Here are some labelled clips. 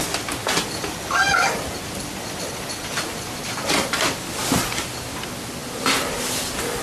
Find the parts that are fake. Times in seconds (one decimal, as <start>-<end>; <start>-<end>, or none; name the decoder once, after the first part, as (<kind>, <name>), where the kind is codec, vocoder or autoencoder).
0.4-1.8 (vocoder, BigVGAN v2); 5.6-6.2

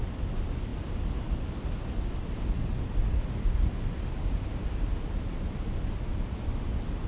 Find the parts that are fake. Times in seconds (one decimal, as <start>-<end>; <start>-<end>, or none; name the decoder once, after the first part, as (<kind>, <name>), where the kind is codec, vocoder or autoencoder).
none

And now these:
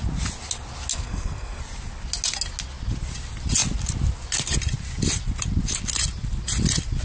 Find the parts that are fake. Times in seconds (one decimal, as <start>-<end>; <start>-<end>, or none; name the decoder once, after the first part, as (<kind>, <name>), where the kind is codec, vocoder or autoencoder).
0.9-1.6 (codec, SNAC)

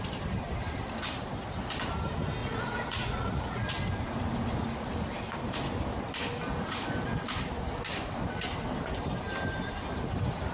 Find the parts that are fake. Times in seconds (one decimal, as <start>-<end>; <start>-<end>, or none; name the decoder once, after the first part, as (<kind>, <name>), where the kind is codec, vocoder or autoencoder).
2.4-3.7 (vocoder, Vocos)